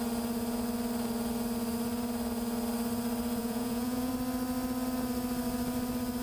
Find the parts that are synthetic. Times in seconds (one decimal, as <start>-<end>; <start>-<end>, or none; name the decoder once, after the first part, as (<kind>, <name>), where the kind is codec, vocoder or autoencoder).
3.4-4.1 (vocoder, Vocos)